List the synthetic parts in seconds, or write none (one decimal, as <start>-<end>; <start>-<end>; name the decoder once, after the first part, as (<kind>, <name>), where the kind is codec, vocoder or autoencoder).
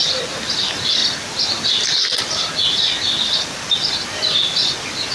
none